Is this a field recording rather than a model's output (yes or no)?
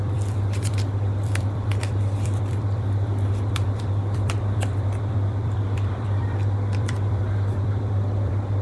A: no